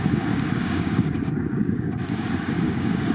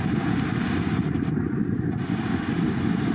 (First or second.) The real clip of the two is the second